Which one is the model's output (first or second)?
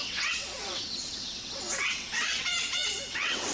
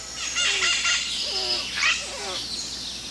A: first